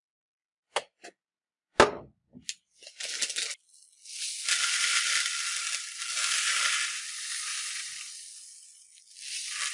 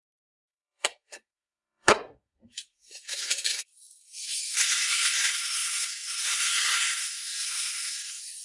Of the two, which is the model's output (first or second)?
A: second